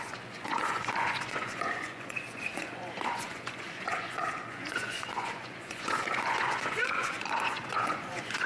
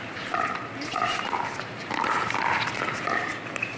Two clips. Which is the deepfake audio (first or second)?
first